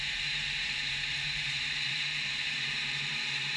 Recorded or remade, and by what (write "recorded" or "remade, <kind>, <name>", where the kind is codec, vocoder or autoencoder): remade, vocoder, BigVGAN v2